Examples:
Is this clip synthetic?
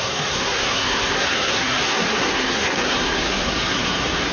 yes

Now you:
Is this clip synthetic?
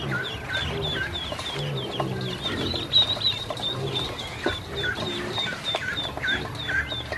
no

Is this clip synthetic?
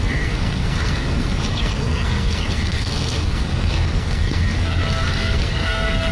yes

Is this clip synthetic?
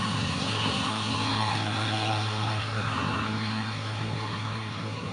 yes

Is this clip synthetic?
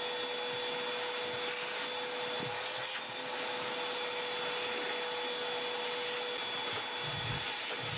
no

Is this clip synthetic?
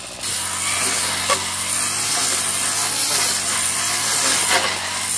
no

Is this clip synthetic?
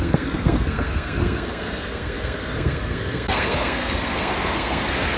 yes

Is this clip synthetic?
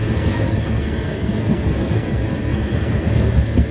yes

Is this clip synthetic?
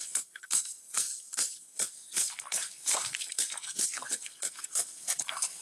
yes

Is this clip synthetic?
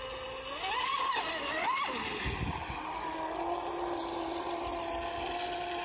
no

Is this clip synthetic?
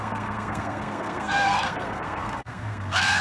yes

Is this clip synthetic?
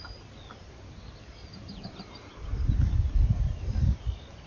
no